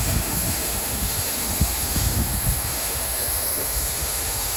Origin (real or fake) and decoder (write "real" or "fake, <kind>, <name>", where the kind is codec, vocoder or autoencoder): fake, autoencoder, DAC-VAE